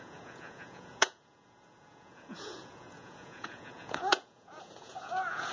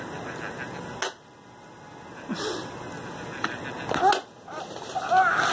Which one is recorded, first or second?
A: second